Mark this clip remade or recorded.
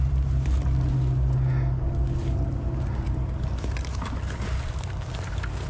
recorded